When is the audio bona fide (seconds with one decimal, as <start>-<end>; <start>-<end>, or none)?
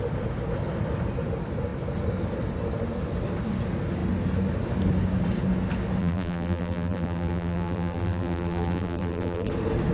0.0-6.0; 9.5-9.9